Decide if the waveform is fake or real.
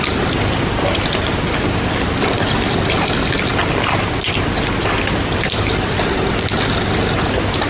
real